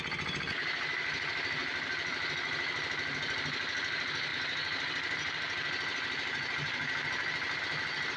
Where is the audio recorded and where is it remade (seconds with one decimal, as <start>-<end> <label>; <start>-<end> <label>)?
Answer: 0.0-8.2 recorded

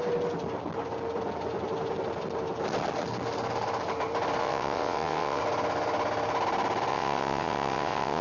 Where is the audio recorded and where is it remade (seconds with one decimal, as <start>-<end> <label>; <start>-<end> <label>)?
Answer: 0.0-4.4 recorded; 4.4-5.4 remade; 5.4-6.9 recorded; 6.9-8.2 remade

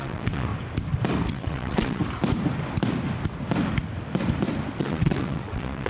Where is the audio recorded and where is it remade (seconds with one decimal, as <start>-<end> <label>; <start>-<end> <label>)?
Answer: 0.0-0.5 remade; 0.5-1.3 recorded; 1.3-2.0 remade; 2.0-4.8 recorded; 4.8-5.9 remade

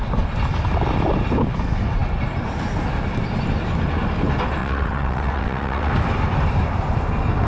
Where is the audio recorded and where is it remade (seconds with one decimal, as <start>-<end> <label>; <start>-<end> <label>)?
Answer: 0.0-4.6 recorded; 4.6-5.9 remade; 5.9-7.5 recorded

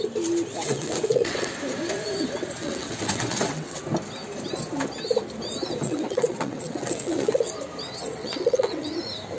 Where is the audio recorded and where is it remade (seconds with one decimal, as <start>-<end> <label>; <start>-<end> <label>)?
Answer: 0.0-0.6 recorded; 0.6-1.5 remade; 1.5-2.6 recorded; 2.6-3.8 remade; 3.8-5.8 recorded; 5.8-7.5 remade; 7.5-8.2 recorded; 8.2-9.0 remade; 9.0-9.4 recorded